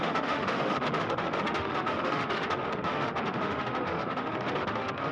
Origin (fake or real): fake